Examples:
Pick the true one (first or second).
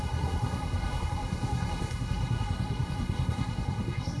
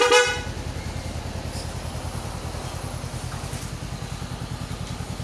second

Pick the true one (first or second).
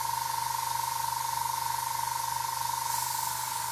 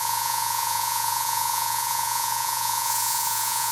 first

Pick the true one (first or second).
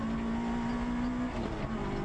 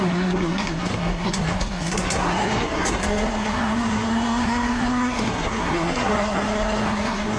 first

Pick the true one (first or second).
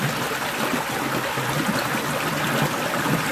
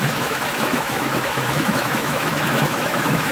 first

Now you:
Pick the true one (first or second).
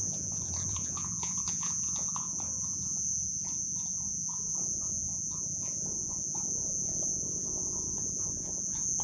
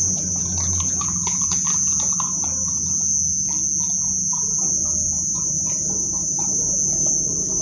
second